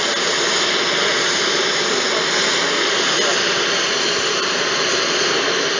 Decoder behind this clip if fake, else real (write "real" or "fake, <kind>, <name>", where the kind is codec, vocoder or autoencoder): real